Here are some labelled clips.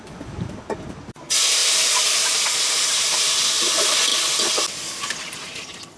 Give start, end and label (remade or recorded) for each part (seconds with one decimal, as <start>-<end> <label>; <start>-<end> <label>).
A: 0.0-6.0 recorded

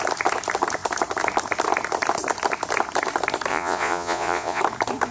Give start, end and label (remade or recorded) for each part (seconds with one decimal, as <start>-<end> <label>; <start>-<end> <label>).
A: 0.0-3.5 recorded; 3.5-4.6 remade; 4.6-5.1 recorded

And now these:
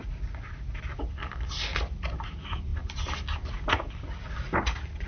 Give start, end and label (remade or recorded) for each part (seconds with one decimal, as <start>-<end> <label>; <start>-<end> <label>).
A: 0.0-5.1 recorded